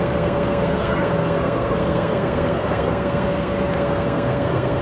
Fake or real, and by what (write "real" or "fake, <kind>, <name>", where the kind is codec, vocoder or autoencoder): fake, codec, SNAC